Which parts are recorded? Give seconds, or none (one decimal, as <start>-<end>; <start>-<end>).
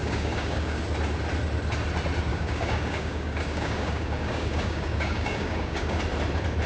0.8-2.3; 6.0-6.7